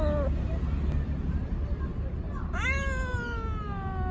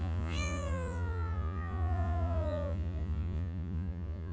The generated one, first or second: second